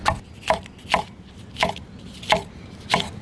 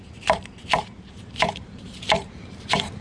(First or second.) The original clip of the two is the first